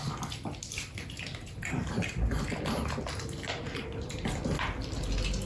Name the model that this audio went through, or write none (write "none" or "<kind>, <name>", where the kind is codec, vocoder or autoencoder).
none